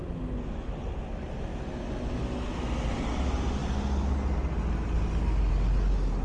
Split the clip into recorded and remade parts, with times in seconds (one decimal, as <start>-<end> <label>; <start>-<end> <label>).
0.0-6.2 recorded